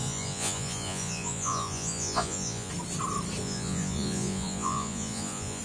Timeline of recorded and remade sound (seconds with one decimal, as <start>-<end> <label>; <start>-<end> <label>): 0.0-2.7 remade; 2.7-3.4 recorded; 3.4-5.6 remade